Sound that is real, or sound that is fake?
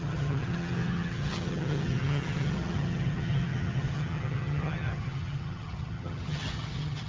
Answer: fake